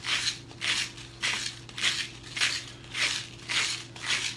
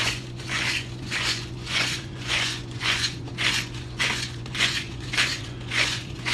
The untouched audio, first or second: first